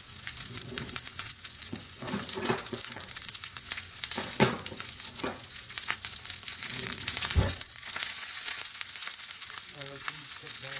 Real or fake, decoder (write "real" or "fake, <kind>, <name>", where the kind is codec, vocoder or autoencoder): fake, vocoder, Vocos